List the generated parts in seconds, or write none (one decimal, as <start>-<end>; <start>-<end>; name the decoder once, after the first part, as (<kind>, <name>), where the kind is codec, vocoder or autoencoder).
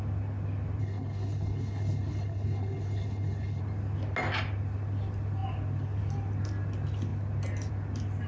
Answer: 0.8-3.6 (codec, HILCodec)